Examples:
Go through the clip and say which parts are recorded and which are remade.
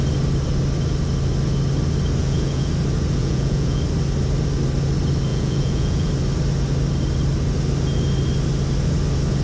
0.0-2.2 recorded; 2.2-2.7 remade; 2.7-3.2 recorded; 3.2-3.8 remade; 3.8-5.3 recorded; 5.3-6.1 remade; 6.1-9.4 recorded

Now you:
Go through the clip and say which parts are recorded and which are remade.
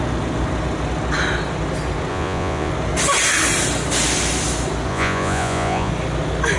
0.0-2.1 recorded; 2.1-2.7 remade; 2.7-4.9 recorded; 4.9-5.9 remade; 5.9-6.6 recorded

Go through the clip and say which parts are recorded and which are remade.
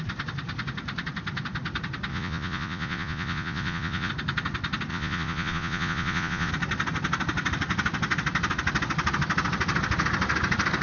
0.0-2.1 recorded; 2.1-4.1 remade; 4.1-4.9 recorded; 4.9-6.5 remade; 6.5-10.8 recorded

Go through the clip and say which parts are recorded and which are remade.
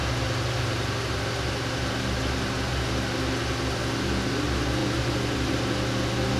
0.0-6.4 recorded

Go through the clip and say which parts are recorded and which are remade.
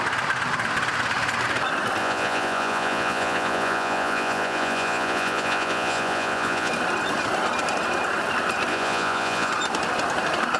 0.0-2.0 recorded; 2.0-6.7 remade; 6.7-8.7 recorded; 8.7-9.5 remade; 9.5-10.6 recorded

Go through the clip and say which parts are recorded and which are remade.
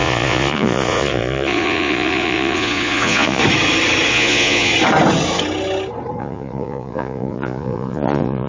0.0-3.4 remade; 3.4-4.1 recorded; 4.1-4.7 remade; 4.7-6.2 recorded; 6.2-8.5 remade